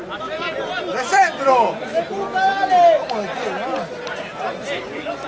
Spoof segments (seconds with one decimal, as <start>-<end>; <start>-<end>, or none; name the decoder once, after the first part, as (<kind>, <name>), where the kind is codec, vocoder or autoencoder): 0.0-1.5 (vocoder, BigVGAN v2)

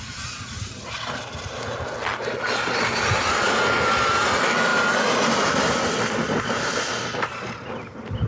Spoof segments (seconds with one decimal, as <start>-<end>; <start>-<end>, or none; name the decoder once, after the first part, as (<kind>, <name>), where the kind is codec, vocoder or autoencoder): none

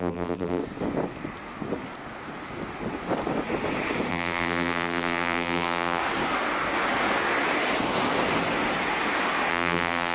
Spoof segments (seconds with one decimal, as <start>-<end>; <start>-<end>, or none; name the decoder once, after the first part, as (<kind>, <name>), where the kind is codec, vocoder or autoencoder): 0.0-0.6 (vocoder, BigVGAN v2); 4.1-6.0; 9.5-10.1